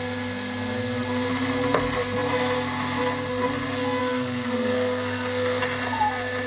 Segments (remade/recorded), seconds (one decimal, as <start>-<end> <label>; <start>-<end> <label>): 0.0-4.0 recorded; 4.0-5.6 remade; 5.6-6.5 recorded